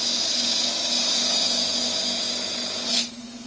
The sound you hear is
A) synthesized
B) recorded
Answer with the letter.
A